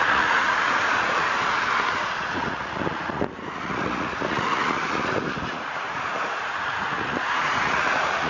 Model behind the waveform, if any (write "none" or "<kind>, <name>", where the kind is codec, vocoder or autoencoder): vocoder, Vocos